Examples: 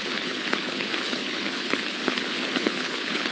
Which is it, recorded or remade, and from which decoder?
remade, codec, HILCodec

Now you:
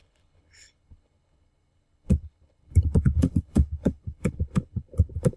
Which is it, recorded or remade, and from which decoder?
remade, codec, HILCodec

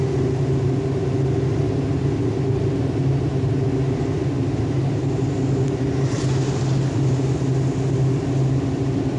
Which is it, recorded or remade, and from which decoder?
recorded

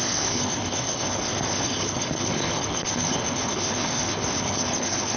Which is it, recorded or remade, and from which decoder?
remade, codec, HILCodec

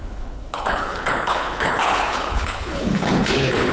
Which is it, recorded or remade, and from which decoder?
remade, codec, HILCodec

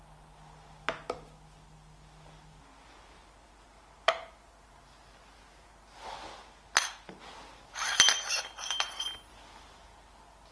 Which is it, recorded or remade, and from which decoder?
recorded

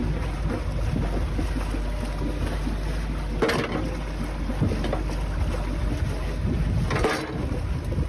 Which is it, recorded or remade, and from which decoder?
recorded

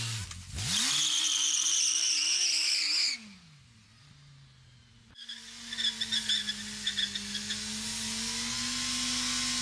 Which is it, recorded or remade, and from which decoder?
recorded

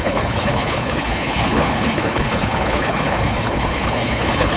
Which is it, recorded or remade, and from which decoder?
remade, codec, HILCodec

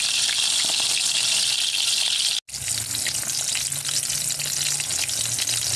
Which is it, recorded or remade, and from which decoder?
recorded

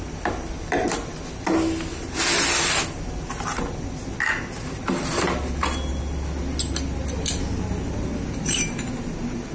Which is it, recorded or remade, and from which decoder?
recorded